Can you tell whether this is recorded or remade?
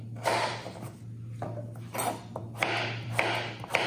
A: recorded